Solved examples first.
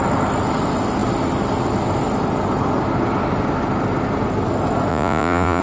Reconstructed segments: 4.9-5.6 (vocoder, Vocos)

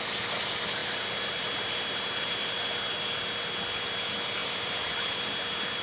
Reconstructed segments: 4.4-5.8 (vocoder, BigVGAN v2)

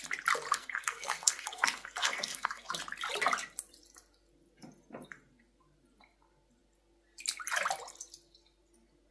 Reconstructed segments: 0.5-2.7 (codec, SNAC)

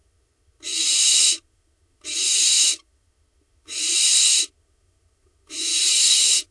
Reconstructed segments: 0.0-6.5 (autoencoder, DAC-VAE)